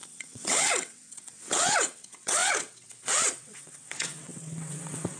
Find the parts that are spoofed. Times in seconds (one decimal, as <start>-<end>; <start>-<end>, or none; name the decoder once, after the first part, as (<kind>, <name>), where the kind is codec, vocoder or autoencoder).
0.0-5.2 (vocoder, WaveNeXt)